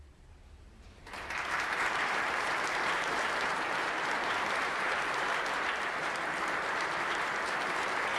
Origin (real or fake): fake